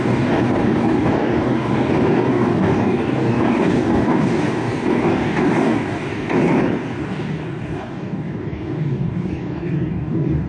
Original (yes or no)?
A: no